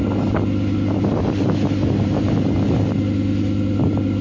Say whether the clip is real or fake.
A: real